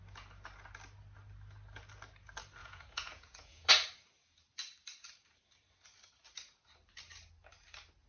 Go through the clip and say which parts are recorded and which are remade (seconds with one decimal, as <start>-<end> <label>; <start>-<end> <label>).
0.0-2.6 recorded; 2.6-3.7 remade; 3.7-8.1 recorded